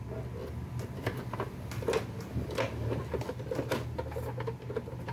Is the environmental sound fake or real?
real